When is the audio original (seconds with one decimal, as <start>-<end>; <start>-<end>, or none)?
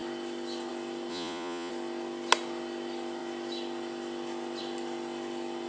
0.0-1.1; 1.7-5.7